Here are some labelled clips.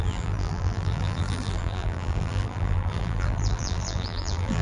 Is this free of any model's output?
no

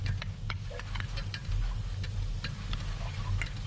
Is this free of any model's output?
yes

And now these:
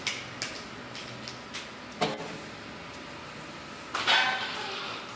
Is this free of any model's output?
yes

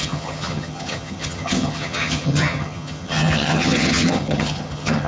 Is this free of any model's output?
no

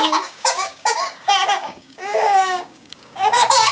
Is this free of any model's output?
no